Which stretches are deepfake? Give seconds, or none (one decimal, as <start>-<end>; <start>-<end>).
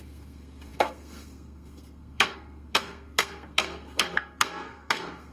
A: 0.0-5.3